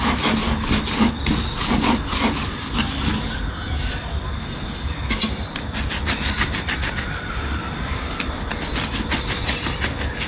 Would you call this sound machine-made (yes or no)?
no